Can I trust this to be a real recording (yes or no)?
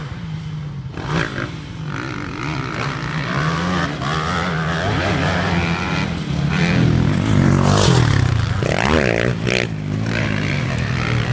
yes